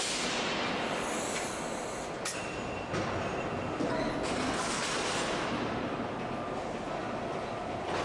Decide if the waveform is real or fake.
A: real